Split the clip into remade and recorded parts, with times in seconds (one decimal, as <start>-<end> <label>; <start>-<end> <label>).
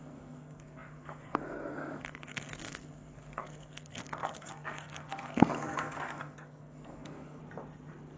0.0-7.4 remade; 7.4-8.2 recorded